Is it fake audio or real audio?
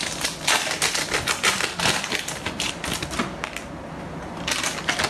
real